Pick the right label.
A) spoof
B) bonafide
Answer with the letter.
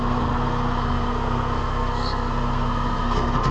A